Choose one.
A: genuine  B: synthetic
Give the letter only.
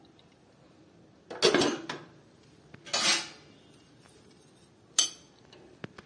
A